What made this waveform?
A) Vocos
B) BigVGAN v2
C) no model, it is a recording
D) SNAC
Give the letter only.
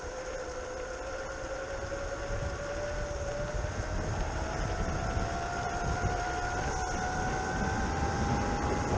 C